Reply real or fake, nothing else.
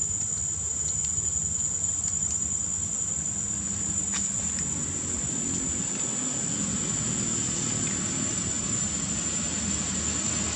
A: real